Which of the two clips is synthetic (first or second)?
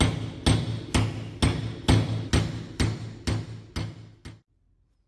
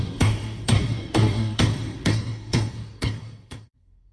second